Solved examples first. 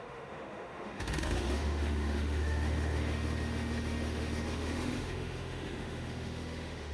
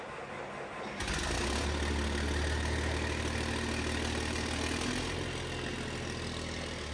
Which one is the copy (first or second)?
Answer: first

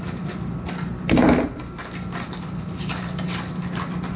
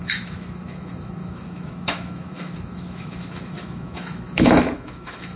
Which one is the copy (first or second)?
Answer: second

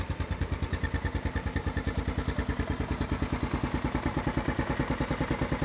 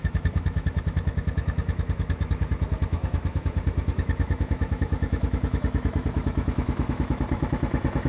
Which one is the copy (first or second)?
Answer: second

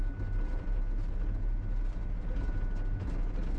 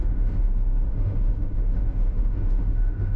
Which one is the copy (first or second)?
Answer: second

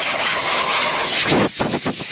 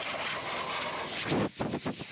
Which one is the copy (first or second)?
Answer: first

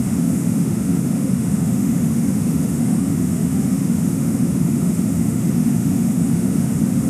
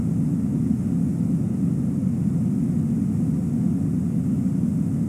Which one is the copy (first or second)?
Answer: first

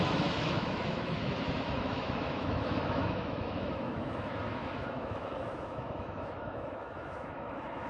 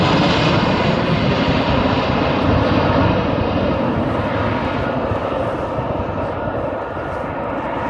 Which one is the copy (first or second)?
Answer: first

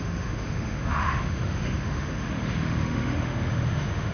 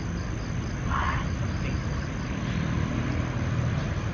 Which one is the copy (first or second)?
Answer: first